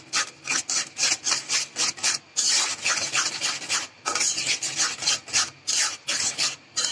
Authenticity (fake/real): real